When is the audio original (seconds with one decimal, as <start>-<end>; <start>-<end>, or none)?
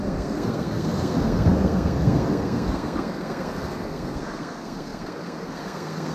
none